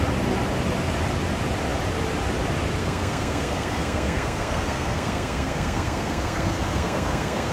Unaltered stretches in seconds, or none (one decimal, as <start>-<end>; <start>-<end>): 0.0-2.8

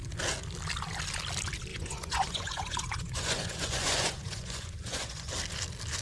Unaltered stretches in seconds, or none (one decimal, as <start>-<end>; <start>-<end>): 0.0-1.7; 5.3-6.0